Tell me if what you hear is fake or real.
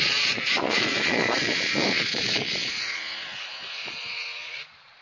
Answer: fake